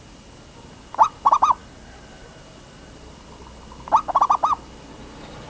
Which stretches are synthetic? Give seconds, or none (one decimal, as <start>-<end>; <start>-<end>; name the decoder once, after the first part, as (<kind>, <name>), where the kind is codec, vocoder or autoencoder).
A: none